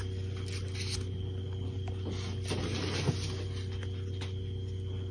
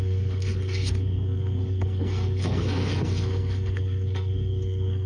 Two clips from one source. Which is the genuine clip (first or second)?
first